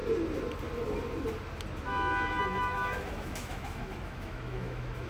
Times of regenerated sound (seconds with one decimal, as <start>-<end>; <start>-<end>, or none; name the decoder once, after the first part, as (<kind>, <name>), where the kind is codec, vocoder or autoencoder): 2.4-5.1 (autoencoder, DAC-VAE)